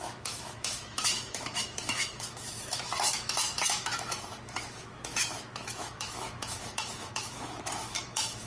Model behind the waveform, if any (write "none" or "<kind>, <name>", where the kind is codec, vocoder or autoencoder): autoencoder, DAC-VAE